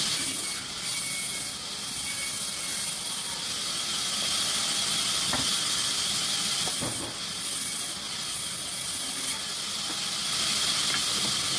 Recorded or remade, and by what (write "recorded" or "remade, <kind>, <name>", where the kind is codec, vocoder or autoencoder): recorded